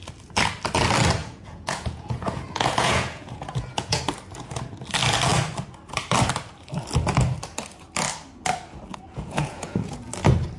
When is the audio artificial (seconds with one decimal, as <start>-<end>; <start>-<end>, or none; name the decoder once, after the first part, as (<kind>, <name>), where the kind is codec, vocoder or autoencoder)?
1.2-4.0 (vocoder, Vocos); 8.9-10.1